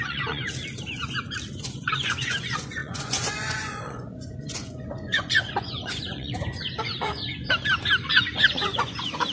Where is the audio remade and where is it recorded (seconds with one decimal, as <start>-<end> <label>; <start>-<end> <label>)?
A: 0.0-0.4 remade; 0.4-1.5 recorded; 1.5-7.4 remade; 7.4-8.0 recorded; 8.0-9.3 remade